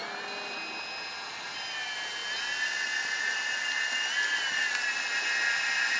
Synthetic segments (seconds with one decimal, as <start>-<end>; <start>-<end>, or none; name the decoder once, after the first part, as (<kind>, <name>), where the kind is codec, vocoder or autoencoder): none